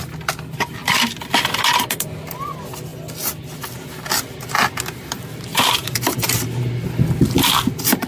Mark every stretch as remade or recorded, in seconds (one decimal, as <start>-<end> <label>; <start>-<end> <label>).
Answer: 0.0-5.5 recorded; 5.5-6.6 remade; 6.6-8.1 recorded